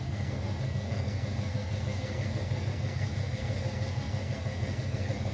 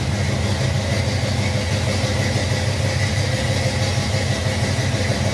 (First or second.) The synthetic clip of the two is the first